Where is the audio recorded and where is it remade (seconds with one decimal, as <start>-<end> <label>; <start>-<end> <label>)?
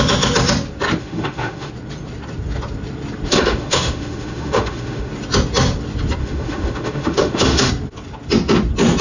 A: 0.0-1.0 recorded; 1.0-1.7 remade; 1.7-3.3 recorded; 3.3-5.1 remade; 5.1-6.2 recorded; 6.2-7.7 remade; 7.7-9.0 recorded